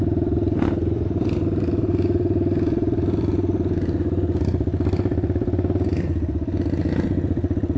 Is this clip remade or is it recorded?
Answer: remade